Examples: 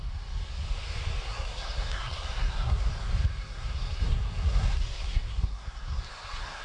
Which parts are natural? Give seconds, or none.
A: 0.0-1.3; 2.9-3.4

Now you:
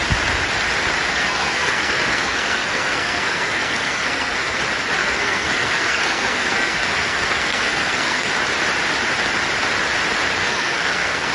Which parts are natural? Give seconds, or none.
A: 0.0-1.1; 4.6-5.0; 8.3-10.4

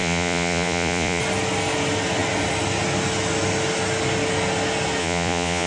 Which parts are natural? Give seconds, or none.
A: 1.2-5.0

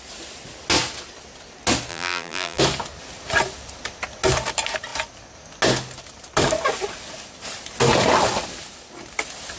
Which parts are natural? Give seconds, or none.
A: 0.0-1.9; 2.6-9.6

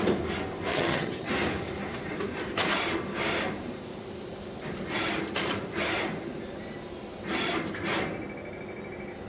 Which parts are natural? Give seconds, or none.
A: 0.0-0.7; 1.3-9.3